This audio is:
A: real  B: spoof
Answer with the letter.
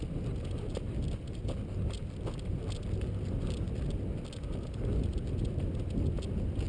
A